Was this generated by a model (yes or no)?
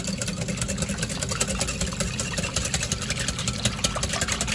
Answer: no